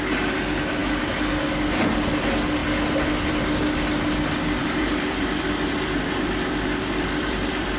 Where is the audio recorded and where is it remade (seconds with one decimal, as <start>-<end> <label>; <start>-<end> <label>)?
0.0-4.6 recorded; 4.6-7.8 remade